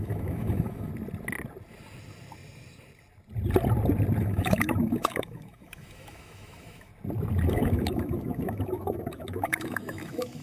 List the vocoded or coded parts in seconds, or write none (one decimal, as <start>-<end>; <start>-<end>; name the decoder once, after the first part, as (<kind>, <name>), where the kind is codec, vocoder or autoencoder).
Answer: 0.0-0.9 (autoencoder, DAC-VAE); 4.2-6.9; 7.5-10.4